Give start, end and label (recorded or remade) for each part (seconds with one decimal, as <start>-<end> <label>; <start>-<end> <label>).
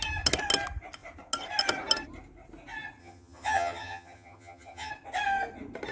0.0-3.0 recorded; 3.0-4.9 remade; 4.9-5.9 recorded